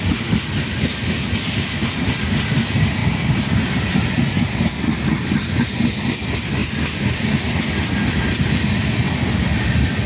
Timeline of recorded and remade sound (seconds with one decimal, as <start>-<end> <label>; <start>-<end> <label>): 0.0-10.1 recorded